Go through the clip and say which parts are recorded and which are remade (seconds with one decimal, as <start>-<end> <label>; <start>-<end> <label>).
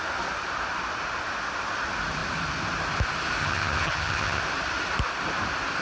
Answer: 0.0-3.4 recorded; 3.4-4.4 remade; 4.4-5.8 recorded